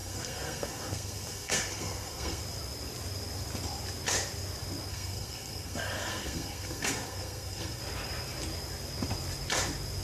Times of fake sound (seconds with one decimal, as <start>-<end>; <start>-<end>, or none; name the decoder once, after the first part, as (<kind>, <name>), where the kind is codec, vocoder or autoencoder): 0.0-2.4 (codec, SNAC); 4.9-7.8